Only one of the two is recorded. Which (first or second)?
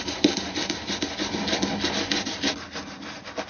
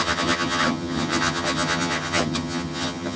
first